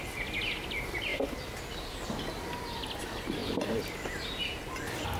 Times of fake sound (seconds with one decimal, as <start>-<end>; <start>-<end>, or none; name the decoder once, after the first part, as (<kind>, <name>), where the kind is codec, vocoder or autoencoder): 3.4-3.9 (vocoder, BigVGAN v2)